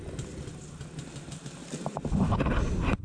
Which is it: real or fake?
real